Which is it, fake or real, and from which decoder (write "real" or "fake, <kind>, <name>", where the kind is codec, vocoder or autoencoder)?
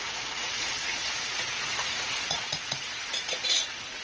fake, vocoder, Vocos